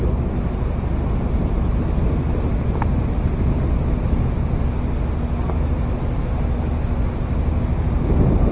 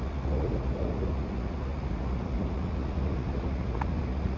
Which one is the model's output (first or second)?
second